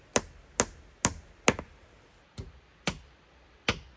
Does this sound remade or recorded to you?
recorded